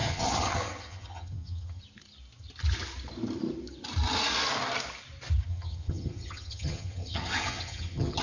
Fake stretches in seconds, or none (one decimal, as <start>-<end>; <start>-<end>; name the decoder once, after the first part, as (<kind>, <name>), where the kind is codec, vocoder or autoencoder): 0.0-1.8 (vocoder, HiFi-GAN); 5.5-8.2